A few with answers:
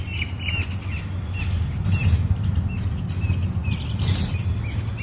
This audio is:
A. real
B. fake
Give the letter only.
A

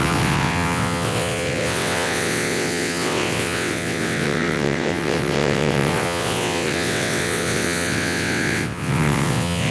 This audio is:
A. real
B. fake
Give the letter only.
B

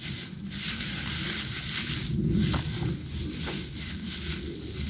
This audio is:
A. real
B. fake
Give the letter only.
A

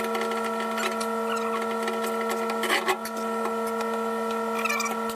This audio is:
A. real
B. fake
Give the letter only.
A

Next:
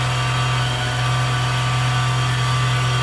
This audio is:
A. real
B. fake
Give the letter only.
A